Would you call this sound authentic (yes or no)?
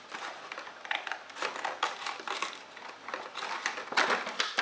yes